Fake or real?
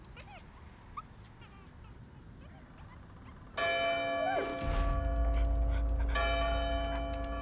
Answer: real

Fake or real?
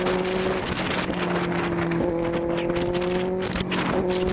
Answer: real